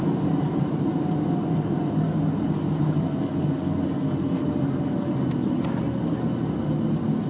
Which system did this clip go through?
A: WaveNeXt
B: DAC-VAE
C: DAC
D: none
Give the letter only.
D